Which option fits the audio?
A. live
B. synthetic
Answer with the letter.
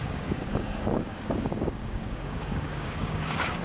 B